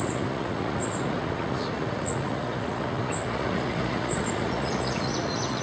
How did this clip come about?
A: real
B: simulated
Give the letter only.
B